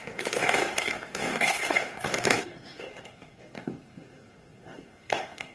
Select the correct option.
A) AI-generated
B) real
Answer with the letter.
A